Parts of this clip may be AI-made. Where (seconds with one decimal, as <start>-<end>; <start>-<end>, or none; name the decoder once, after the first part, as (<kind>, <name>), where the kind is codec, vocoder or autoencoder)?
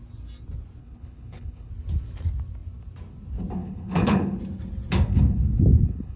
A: 0.8-1.7 (codec, HILCodec); 3.6-4.4; 5.1-6.2